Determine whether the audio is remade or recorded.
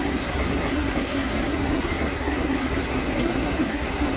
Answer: remade